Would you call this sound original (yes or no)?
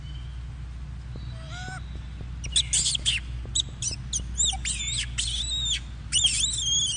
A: yes